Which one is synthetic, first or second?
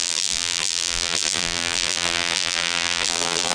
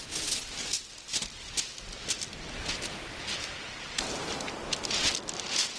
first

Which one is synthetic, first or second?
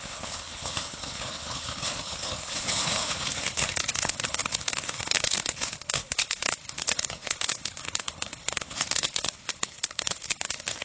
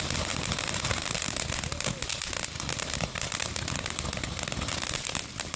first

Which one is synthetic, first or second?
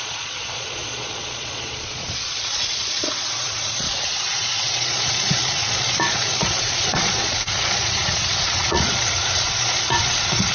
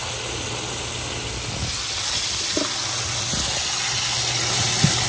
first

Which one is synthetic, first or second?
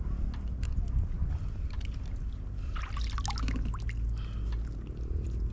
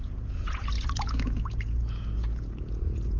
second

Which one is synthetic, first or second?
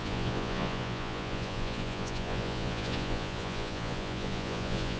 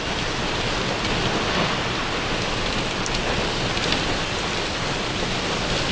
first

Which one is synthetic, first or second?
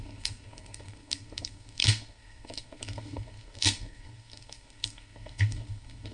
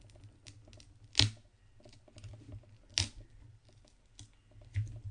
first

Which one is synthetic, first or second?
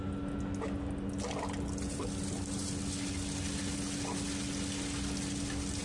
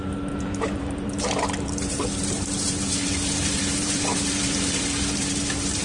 second